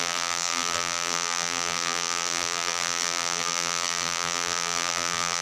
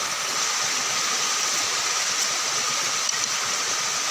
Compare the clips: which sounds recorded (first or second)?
second